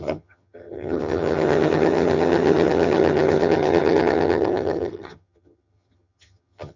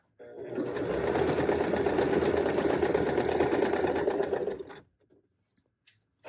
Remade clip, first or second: first